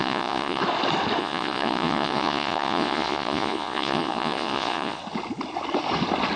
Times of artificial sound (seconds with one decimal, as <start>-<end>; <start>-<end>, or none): 0.0-0.6; 1.2-5.0